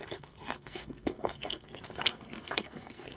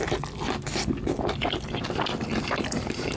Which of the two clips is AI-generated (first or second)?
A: first